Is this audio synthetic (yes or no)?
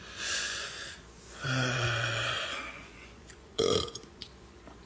yes